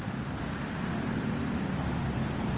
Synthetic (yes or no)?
no